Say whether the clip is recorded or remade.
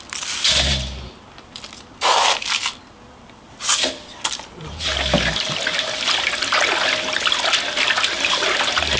recorded